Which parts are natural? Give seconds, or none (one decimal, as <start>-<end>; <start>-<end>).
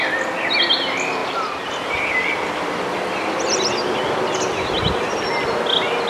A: 0.0-1.2; 4.9-6.1